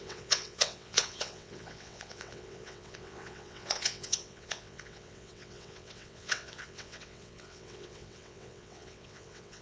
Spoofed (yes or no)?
yes